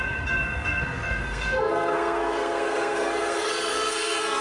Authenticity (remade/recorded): remade